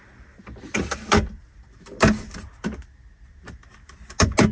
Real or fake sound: real